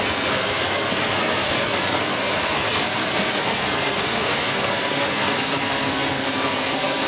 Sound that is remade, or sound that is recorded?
remade